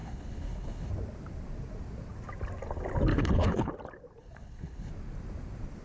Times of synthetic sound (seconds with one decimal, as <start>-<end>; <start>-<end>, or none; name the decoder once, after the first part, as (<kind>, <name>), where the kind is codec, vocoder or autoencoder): 0.0-0.9 (codec, HILCodec); 3.1-3.7; 4.2-4.9